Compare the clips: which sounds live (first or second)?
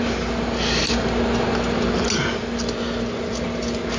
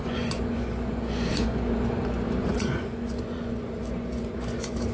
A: first